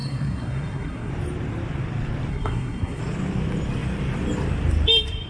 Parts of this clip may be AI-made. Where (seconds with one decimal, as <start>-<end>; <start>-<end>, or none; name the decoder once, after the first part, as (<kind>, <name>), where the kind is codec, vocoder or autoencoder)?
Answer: 0.0-1.1 (codec, SNAC); 2.3-3.0